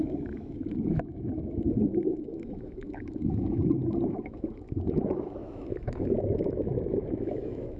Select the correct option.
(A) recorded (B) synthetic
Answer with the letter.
B